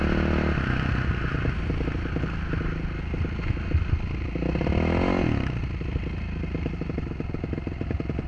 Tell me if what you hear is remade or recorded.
recorded